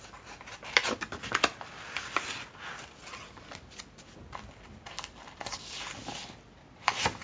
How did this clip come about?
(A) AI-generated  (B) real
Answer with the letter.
B